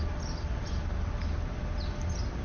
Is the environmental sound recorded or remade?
recorded